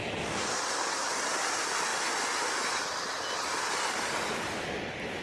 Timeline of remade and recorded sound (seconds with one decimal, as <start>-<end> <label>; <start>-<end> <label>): 0.0-5.2 recorded

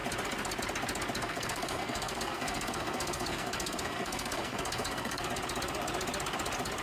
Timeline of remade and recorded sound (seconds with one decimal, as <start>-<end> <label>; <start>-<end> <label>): 0.0-1.2 recorded; 1.2-5.3 remade; 5.3-6.8 recorded